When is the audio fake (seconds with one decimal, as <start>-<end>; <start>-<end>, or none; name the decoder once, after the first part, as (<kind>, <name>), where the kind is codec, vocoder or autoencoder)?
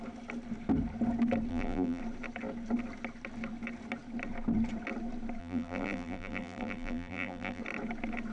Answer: 1.5-2.0 (vocoder, BigVGAN v2); 5.4-7.6